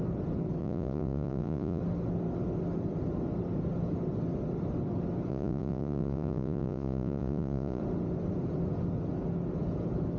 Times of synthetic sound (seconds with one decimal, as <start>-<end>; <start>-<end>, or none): 0.6-1.8; 5.3-7.8